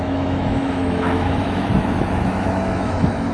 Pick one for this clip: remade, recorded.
remade